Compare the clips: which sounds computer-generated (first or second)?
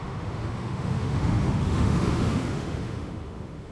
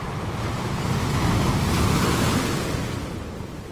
first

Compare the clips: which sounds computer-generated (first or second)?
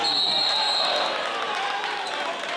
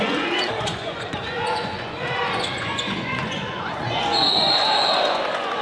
second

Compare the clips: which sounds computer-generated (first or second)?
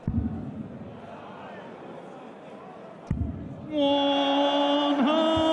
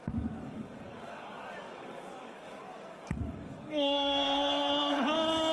second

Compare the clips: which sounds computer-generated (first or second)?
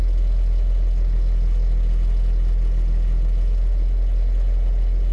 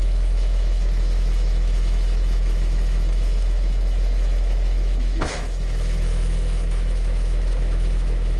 second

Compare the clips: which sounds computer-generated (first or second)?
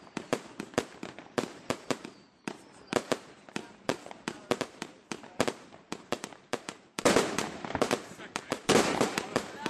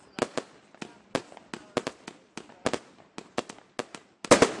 first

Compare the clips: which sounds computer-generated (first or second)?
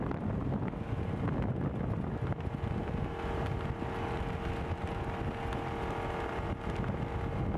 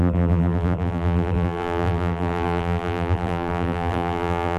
second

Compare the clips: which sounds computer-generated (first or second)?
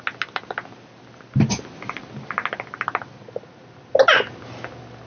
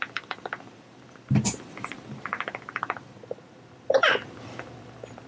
second